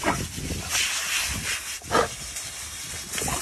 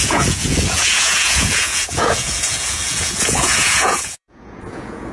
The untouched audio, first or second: first